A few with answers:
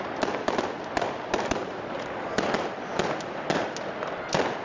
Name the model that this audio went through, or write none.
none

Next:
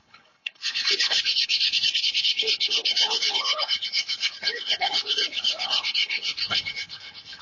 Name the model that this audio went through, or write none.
codec, HILCodec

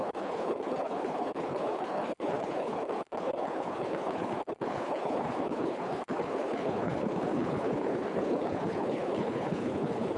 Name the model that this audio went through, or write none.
codec, HILCodec